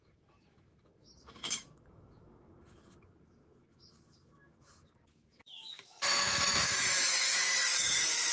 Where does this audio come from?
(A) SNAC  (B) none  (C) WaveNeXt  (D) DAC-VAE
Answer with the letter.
D